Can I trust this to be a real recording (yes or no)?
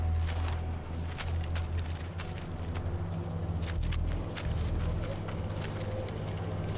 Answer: yes